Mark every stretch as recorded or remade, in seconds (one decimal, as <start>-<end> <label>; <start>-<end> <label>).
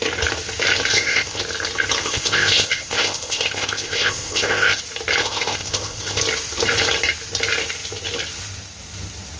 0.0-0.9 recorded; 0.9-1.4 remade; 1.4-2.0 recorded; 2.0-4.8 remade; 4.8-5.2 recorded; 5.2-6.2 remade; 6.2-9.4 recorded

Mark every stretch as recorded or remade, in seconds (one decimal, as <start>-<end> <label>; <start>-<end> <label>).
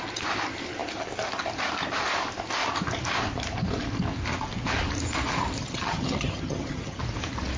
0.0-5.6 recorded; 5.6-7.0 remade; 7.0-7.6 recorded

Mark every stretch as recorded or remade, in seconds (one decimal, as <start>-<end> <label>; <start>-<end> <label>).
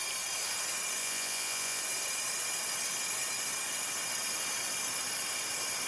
0.0-1.0 recorded; 1.0-1.8 remade; 1.8-5.9 recorded